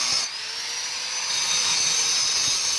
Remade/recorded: remade